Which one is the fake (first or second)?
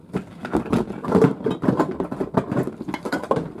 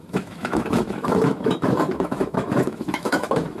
second